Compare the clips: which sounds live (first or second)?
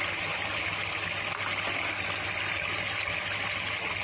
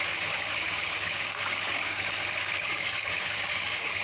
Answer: first